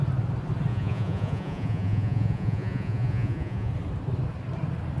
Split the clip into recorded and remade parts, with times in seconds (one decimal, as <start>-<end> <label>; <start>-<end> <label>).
0.0-0.7 recorded; 0.7-3.7 remade; 3.7-5.0 recorded